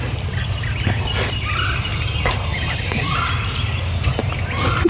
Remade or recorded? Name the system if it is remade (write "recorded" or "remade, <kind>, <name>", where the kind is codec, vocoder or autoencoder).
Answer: recorded